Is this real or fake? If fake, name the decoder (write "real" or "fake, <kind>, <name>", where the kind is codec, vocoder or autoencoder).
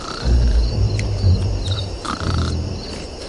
fake, vocoder, BigVGAN v2